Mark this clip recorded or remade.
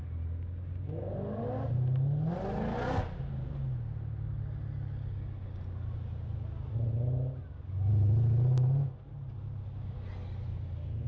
recorded